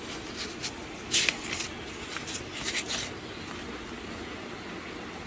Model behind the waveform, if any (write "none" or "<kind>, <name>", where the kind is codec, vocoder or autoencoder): none